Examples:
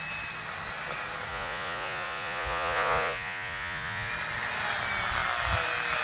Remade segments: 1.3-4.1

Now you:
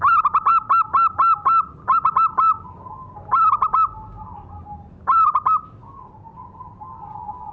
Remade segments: none

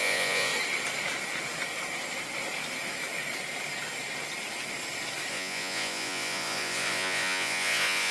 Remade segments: 0.0-0.5; 5.3-8.1

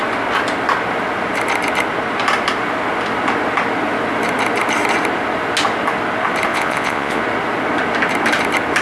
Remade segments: 6.5-7.2